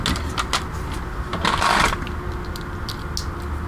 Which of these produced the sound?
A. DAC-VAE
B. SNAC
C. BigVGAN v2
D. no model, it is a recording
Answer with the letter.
D